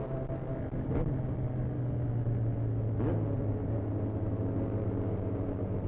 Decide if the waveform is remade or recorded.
recorded